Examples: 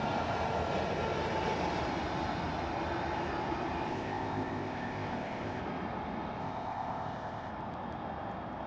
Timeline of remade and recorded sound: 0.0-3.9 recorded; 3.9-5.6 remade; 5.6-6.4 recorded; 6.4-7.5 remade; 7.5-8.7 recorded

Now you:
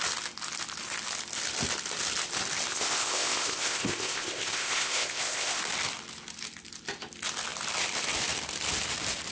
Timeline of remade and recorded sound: 0.0-2.7 recorded; 2.7-5.6 remade; 5.6-9.3 recorded

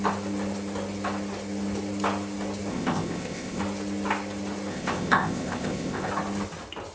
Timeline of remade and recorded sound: 0.0-2.7 recorded; 2.7-3.6 remade; 3.6-4.7 recorded; 4.7-6.1 remade; 6.1-6.9 recorded

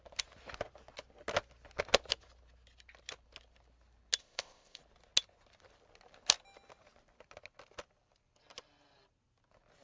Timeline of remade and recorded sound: 0.0-4.2 recorded; 4.2-4.8 remade; 4.8-9.8 recorded

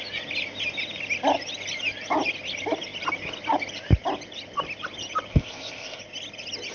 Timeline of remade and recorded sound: 0.0-5.3 recorded; 5.3-6.0 remade; 6.0-6.7 recorded

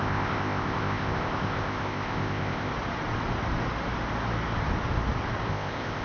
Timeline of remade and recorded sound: 0.0-2.7 remade; 2.7-5.5 recorded; 5.5-6.0 remade

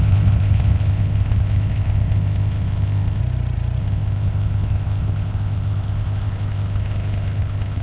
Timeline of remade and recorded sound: 0.0-3.2 remade; 3.2-3.8 recorded; 3.8-7.8 remade